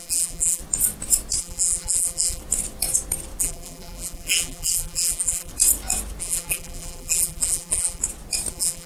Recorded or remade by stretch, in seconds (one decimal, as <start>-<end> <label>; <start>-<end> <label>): 0.0-0.6 remade; 0.6-1.4 recorded; 1.4-2.4 remade; 2.4-3.4 recorded; 3.4-5.5 remade; 5.5-6.2 recorded; 6.2-8.0 remade; 8.0-8.5 recorded; 8.5-8.9 remade